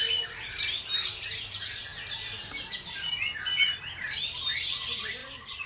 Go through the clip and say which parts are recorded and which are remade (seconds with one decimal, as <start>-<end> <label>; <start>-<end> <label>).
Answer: 0.0-5.7 recorded